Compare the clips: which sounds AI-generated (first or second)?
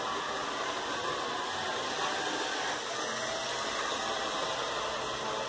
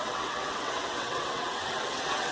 second